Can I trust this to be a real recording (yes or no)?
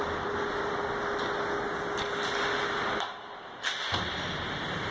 yes